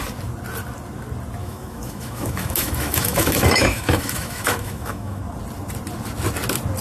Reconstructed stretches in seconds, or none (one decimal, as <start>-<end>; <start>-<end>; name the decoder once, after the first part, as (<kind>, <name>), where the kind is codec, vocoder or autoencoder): 1.4-5.2 (autoencoder, DAC-VAE)